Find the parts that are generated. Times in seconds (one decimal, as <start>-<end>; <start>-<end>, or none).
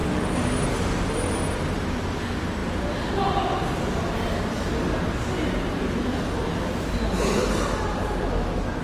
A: none